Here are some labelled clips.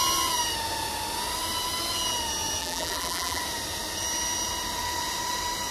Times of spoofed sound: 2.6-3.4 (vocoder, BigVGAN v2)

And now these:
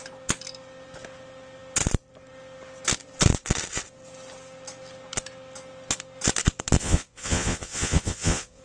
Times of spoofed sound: 6.8-8.6 (vocoder, Vocos)

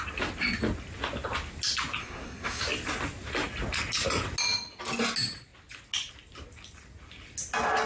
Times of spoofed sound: 2.0-2.6 (codec, SNAC)

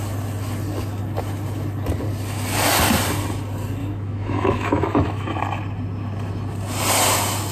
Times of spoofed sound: 3.8-5.4 (autoencoder, DAC-VAE)

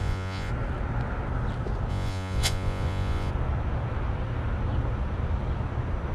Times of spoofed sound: 0.0-0.5 (vocoder, Vocos); 1.9-3.3